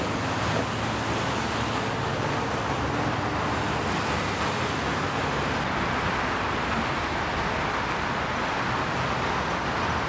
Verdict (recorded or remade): recorded